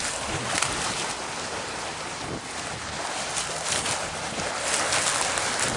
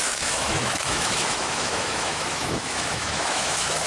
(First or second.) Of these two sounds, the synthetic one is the second